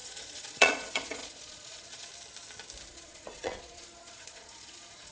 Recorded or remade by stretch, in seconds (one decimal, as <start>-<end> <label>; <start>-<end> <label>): 0.0-2.1 remade; 2.1-2.9 recorded; 2.9-5.1 remade